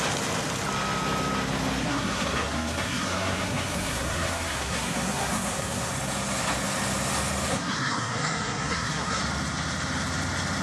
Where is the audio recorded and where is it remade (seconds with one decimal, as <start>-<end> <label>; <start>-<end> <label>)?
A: 0.0-1.8 recorded; 1.8-5.9 remade; 5.9-7.5 recorded; 7.5-9.2 remade; 9.2-10.6 recorded

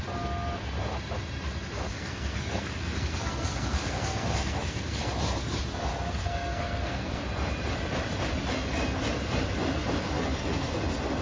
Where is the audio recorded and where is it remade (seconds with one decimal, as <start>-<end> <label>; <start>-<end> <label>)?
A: 0.0-1.9 recorded; 1.9-5.1 remade; 5.1-6.1 recorded; 6.1-7.2 remade; 7.2-11.2 recorded

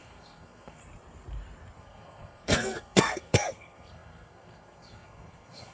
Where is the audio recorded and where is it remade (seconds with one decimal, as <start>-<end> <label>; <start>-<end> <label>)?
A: 0.0-0.8 remade; 0.8-1.8 recorded; 1.8-5.7 remade

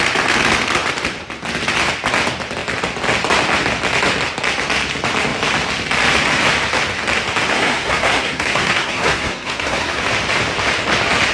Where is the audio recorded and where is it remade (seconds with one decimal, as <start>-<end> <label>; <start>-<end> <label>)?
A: 0.0-7.5 recorded; 7.5-10.0 remade; 10.0-11.3 recorded